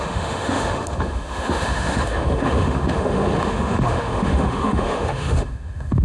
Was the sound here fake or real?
fake